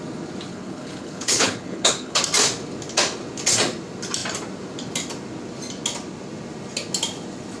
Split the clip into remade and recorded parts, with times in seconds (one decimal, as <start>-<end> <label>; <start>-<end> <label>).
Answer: 0.0-0.5 recorded; 0.5-2.2 remade; 2.2-7.6 recorded